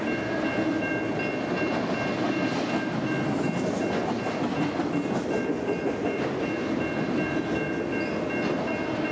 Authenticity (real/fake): real